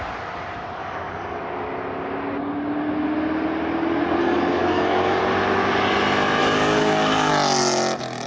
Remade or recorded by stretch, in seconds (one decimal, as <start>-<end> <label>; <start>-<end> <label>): 0.0-0.8 recorded; 0.8-1.4 remade; 1.4-4.2 recorded; 4.2-5.2 remade; 5.2-6.4 recorded; 6.4-7.3 remade; 7.3-8.3 recorded